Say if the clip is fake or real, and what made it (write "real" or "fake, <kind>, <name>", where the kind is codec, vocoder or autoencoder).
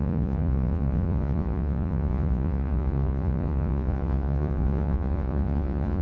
fake, vocoder, Vocos